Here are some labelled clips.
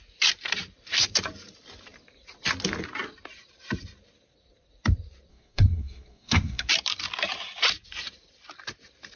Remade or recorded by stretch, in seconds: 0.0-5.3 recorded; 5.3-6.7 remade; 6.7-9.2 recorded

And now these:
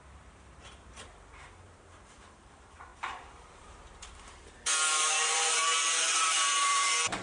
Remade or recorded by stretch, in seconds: 0.0-7.2 remade

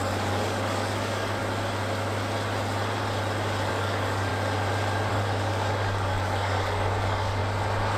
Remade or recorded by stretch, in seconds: 0.0-1.4 remade; 1.4-3.7 recorded; 3.7-4.3 remade; 4.3-5.1 recorded; 5.1-7.4 remade; 7.4-8.0 recorded

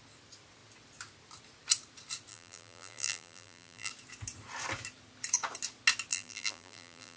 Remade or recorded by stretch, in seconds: 0.0-2.3 recorded; 2.3-3.9 remade; 3.9-6.1 recorded; 6.1-7.2 remade

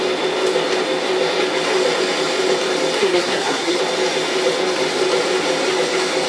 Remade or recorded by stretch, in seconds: 0.0-3.0 recorded; 3.0-3.8 remade; 3.8-6.3 recorded

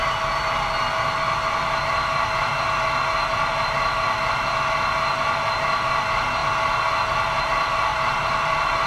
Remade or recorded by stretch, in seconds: 0.0-7.9 recorded; 7.9-8.9 remade

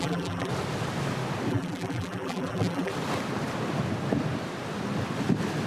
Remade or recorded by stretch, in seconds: 0.0-0.5 remade; 0.5-1.5 recorded; 1.5-2.9 remade; 2.9-5.7 recorded

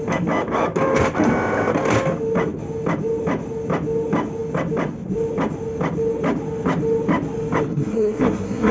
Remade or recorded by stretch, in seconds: 0.0-7.7 recorded; 7.7-8.7 remade